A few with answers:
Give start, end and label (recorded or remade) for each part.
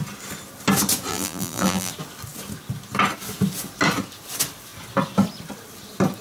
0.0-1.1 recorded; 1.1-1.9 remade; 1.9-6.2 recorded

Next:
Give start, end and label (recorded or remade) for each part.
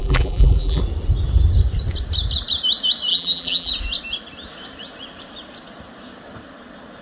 0.0-0.8 remade; 0.8-3.1 recorded; 3.1-3.7 remade; 3.7-7.0 recorded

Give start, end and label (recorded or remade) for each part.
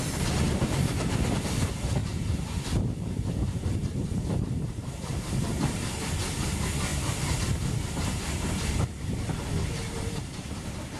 0.0-2.0 recorded; 2.0-5.3 remade; 5.3-11.0 recorded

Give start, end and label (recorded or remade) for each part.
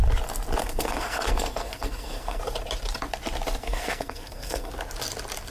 0.0-0.6 recorded; 0.6-2.4 remade; 2.4-3.6 recorded; 3.6-4.7 remade; 4.7-5.5 recorded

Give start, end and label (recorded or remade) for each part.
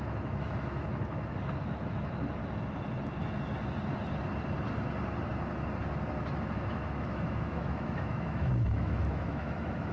0.0-2.4 remade; 2.4-6.4 recorded; 6.4-9.9 remade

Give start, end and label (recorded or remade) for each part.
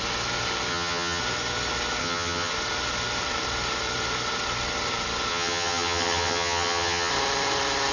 0.0-0.7 recorded; 0.7-1.2 remade; 1.2-2.0 recorded; 2.0-2.5 remade; 2.5-5.3 recorded; 5.3-7.1 remade; 7.1-7.9 recorded